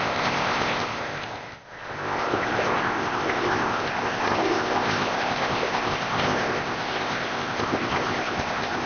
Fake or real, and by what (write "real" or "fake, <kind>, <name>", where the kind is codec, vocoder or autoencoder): fake, codec, ZipCodec